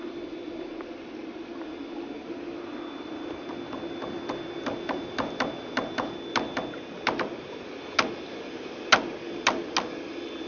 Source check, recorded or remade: recorded